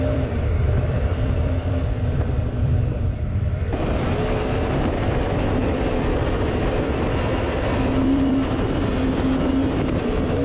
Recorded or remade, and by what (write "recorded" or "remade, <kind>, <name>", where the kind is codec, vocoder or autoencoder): remade, vocoder, BigVGAN v2